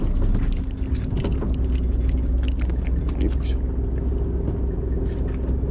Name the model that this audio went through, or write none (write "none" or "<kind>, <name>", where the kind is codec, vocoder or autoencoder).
none